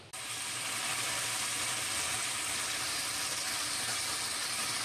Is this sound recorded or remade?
recorded